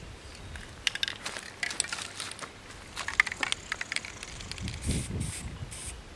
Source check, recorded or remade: recorded